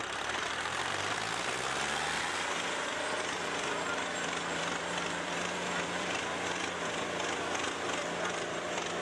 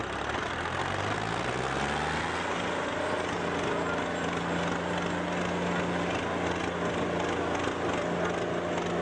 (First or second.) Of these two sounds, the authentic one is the second